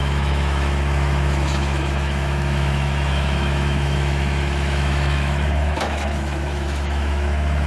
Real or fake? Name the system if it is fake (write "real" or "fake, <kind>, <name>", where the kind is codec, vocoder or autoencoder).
fake, autoencoder, DAC-VAE